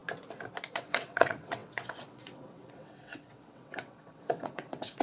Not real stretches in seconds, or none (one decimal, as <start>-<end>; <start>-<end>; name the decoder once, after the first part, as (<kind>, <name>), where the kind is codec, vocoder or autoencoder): 0.7-5.0 (vocoder, WaveNeXt)